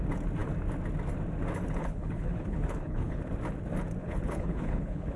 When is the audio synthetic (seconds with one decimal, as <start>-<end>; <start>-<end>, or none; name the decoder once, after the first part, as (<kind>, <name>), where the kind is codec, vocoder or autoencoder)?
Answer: 1.8-3.2 (codec, HILCodec); 4.0-5.2